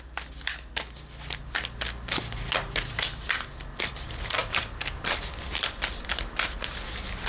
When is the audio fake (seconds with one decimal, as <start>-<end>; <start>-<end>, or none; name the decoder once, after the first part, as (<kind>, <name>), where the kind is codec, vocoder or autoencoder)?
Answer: none